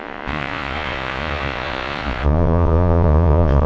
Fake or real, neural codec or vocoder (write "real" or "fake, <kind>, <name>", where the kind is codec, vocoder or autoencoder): fake, vocoder, Vocos